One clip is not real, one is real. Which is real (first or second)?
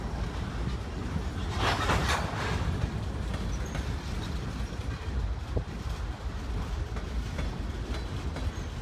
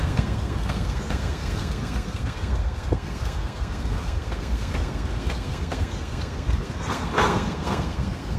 first